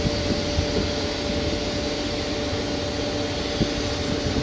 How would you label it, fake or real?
real